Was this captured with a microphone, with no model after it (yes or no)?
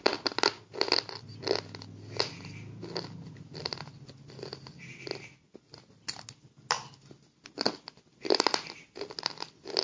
yes